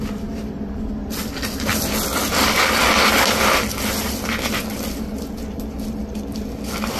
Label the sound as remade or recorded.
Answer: recorded